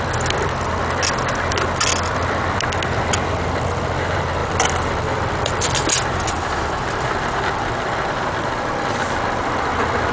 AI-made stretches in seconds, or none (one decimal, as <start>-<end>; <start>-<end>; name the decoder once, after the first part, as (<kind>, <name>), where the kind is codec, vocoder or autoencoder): 4.4-7.0 (vocoder, BigVGAN v2)